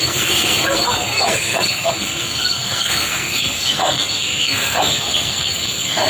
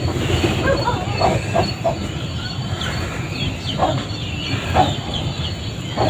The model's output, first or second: first